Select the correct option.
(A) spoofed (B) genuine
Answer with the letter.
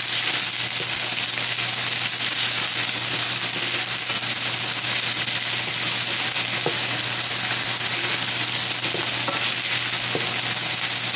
B